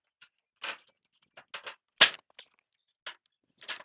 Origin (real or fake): real